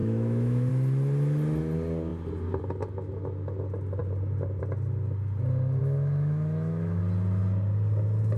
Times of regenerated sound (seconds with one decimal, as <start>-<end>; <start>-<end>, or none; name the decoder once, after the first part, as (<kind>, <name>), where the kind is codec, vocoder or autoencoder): 0.0-0.7 (autoencoder, DAC-VAE); 5.8-7.0